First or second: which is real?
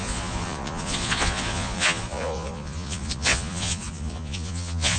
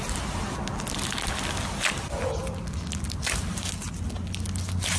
second